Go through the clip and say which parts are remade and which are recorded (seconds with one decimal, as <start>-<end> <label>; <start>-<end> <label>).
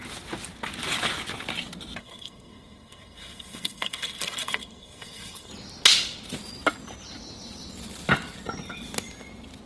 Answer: 0.0-2.0 recorded; 2.0-5.5 remade; 5.5-9.7 recorded